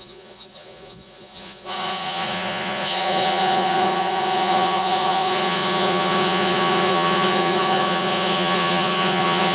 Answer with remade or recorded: remade